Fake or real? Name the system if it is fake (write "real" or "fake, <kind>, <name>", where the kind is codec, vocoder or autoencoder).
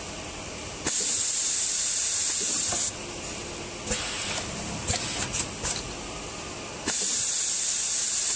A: real